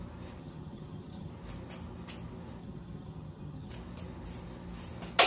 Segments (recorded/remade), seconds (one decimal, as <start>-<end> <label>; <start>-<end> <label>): 0.0-0.4 recorded; 0.4-1.3 remade; 1.3-2.6 recorded; 2.6-3.7 remade; 3.7-5.3 recorded